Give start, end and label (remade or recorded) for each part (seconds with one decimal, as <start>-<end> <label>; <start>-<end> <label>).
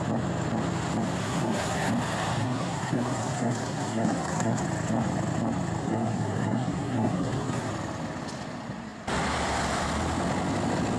0.0-1.2 recorded; 1.2-1.9 remade; 1.9-2.4 recorded; 2.4-4.6 remade; 4.6-5.8 recorded; 5.8-7.7 remade; 7.7-11.0 recorded